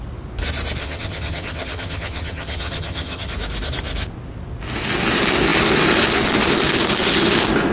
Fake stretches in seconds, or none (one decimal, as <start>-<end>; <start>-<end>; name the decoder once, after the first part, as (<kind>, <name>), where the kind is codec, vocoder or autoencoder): 0.8-3.3 (vocoder, HiFi-GAN)

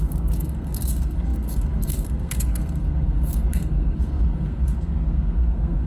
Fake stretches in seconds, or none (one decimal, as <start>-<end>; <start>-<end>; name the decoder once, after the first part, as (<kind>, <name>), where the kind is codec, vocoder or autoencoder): 0.0-5.9 (codec, SNAC)

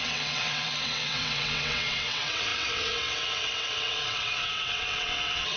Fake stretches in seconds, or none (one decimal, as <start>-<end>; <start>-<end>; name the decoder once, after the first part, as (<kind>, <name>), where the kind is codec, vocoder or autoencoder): 0.0-5.6 (vocoder, WaveNeXt)

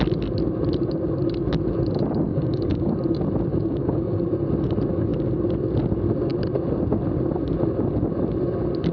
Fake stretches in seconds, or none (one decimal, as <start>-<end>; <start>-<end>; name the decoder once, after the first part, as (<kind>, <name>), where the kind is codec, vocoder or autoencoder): 2.3-2.9 (codec, DAC); 3.5-4.2

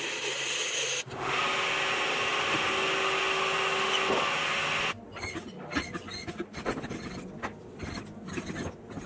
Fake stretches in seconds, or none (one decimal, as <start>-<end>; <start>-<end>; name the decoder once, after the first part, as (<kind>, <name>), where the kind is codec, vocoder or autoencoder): 2.3-3.2 (vocoder, BigVGAN v2); 5.1-6.3

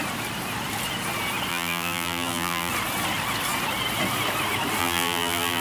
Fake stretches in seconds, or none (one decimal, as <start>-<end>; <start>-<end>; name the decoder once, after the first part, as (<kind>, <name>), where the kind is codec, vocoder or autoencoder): 1.5-2.7 (vocoder, BigVGAN v2); 4.8-5.6

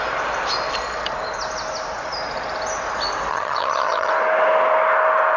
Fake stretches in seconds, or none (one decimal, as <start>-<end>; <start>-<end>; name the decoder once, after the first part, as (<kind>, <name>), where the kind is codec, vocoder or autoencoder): 3.3-4.1 (vocoder, HiFi-GAN)

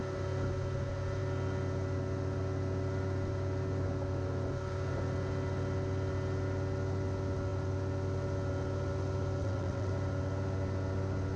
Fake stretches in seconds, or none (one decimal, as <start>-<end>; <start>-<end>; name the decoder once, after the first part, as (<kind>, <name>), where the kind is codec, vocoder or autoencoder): 9.4-9.9 (vocoder, WaveNeXt)